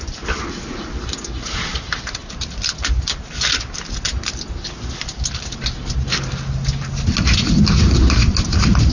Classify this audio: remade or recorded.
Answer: recorded